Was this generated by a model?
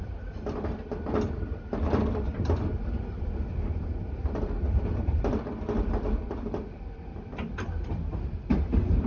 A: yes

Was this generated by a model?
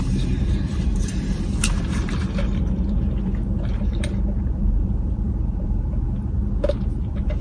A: yes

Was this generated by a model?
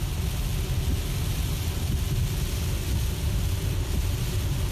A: no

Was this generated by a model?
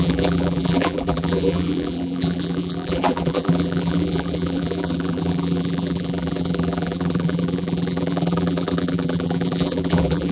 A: yes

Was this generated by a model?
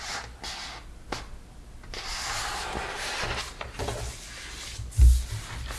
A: no